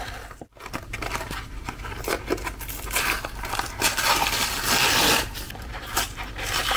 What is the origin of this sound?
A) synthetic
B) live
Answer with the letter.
B